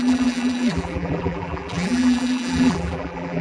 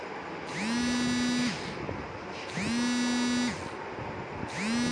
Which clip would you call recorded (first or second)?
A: second